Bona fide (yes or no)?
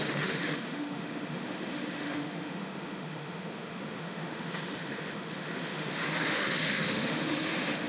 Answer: no